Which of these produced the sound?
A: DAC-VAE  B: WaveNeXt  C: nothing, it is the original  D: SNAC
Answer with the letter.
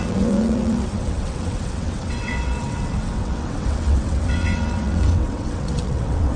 B